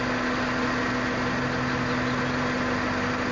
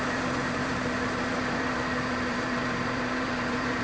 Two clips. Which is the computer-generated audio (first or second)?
second